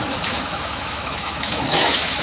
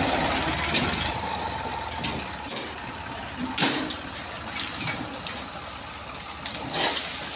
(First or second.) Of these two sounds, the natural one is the second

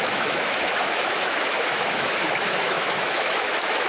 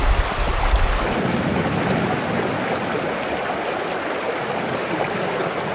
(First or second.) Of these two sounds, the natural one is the second